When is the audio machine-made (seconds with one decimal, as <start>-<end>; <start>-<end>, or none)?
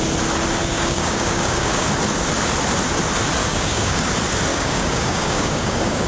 0.6-1.9; 3.4-4.1; 4.5-6.1